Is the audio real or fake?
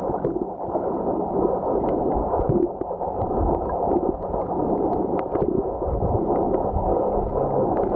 real